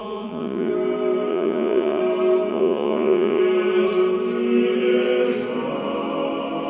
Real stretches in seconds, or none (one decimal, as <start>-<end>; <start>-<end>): 0.7-1.3; 2.0-2.5; 3.4-6.7